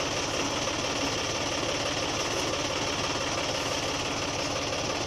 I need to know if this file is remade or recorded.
recorded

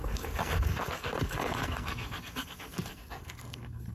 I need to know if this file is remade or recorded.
remade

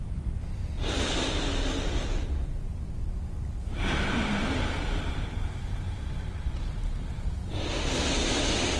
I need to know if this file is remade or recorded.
recorded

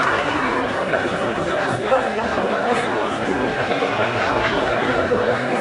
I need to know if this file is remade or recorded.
remade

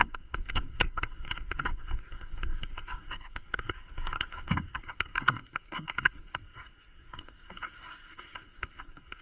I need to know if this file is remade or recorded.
remade